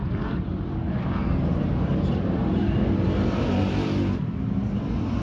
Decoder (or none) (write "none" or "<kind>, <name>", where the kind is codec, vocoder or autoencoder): vocoder, BigVGAN v2